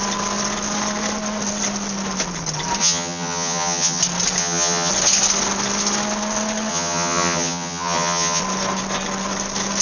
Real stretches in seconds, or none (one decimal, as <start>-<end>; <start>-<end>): 0.0-2.8; 4.0-4.4; 4.9-6.7; 8.4-9.8